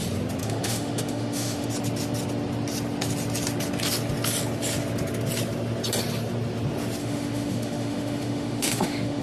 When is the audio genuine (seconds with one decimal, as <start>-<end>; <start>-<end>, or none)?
0.0-0.4; 1.7-7.0